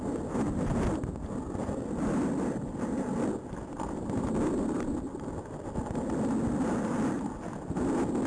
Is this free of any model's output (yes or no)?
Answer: yes